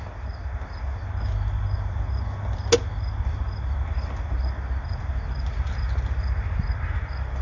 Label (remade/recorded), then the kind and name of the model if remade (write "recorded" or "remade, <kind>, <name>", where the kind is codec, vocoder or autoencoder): recorded